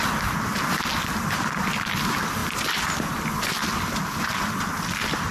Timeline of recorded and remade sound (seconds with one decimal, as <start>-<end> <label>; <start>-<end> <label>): 0.0-5.3 recorded